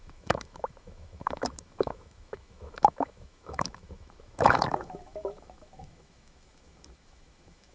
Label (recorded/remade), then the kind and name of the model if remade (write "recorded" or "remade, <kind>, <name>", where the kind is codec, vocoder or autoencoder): remade, autoencoder, DAC-VAE